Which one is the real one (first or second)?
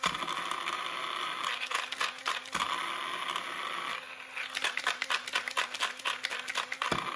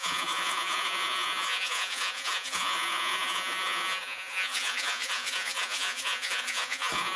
first